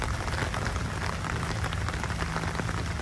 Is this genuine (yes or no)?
yes